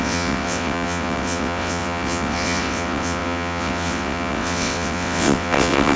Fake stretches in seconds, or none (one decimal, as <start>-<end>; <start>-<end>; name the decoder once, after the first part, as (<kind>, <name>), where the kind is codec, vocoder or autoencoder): 0.0-6.0 (vocoder, WaveNeXt)